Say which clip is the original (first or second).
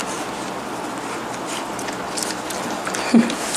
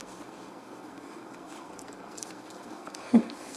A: first